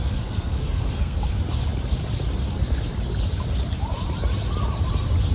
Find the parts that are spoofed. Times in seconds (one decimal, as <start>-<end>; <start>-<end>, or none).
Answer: 0.0-1.2

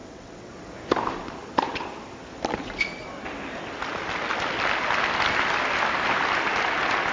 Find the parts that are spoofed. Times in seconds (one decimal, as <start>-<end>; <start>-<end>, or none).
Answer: 0.0-0.5